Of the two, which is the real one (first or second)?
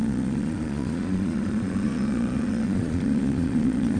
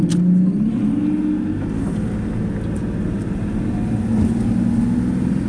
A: second